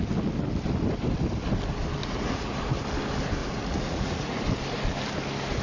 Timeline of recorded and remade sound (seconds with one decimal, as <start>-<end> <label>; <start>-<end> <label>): 0.0-2.0 recorded; 2.0-2.6 remade; 2.6-3.4 recorded; 3.4-4.4 remade; 4.4-5.6 recorded